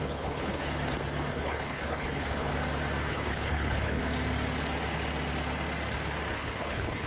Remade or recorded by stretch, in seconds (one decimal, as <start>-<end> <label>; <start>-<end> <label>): 0.0-0.6 remade; 0.6-1.3 recorded; 1.3-2.5 remade; 2.5-3.1 recorded; 3.1-4.0 remade; 4.0-6.3 recorded; 6.3-7.1 remade